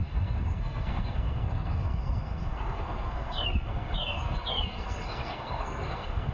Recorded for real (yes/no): no